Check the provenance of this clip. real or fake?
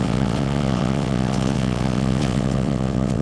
fake